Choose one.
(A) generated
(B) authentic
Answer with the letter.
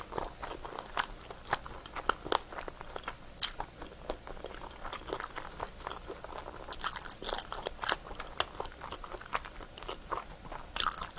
B